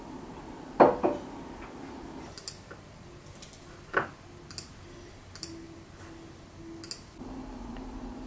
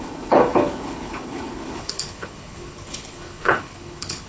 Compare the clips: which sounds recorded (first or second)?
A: first